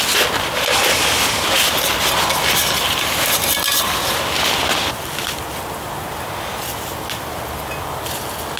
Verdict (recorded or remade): recorded